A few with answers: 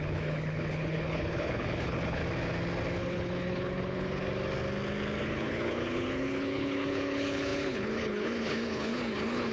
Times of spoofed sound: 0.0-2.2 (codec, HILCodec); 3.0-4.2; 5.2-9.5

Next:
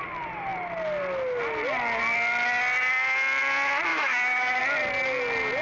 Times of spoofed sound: 3.9-4.6 (autoencoder, DAC-VAE)

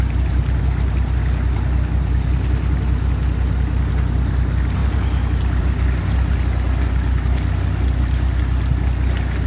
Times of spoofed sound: none

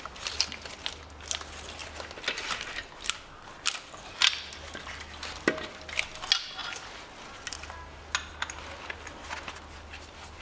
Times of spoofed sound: none

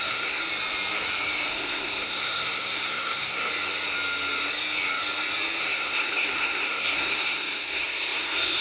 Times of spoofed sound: 0.0-0.4 (codec, SNAC); 1.5-3.5; 5.6-8.6